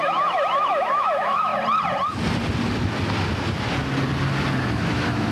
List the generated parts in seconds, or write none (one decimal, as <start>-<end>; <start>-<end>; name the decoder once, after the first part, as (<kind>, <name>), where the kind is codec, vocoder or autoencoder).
0.0-1.5 (autoencoder, DAC-VAE); 4.7-5.3